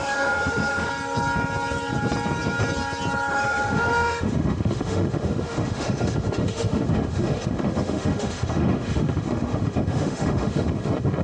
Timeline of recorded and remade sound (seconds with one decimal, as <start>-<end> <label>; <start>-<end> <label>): 0.0-0.9 remade; 0.9-3.3 recorded; 3.3-11.2 remade

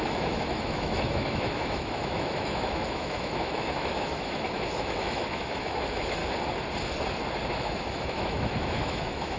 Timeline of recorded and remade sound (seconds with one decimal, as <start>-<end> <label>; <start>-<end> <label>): 0.0-6.2 remade; 6.2-7.5 recorded; 7.5-9.4 remade

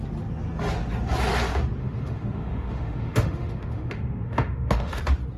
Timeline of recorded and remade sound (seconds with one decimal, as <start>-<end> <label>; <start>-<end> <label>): 0.0-1.8 recorded; 1.8-5.0 remade; 5.0-5.4 recorded

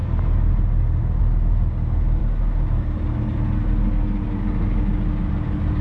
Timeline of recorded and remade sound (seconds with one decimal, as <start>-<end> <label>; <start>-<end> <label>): 0.0-5.8 recorded

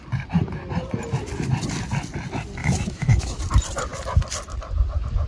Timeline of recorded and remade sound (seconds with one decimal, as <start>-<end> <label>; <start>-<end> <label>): 0.0-2.6 recorded; 2.6-3.4 remade; 3.4-5.3 recorded

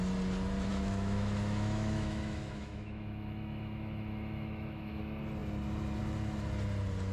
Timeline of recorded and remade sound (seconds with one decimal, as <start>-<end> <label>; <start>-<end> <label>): 0.0-0.7 recorded; 0.7-5.0 remade; 5.0-7.1 recorded

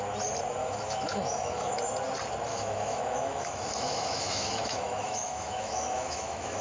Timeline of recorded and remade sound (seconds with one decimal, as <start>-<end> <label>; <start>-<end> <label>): 0.0-0.6 recorded; 0.6-1.8 remade; 1.8-2.5 recorded; 2.5-6.6 remade